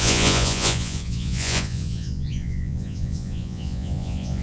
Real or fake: fake